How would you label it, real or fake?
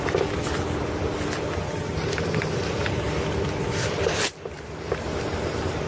fake